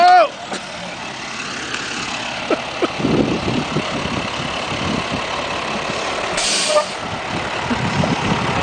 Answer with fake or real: real